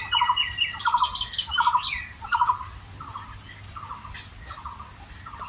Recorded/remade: recorded